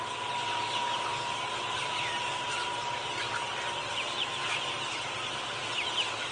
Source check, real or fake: real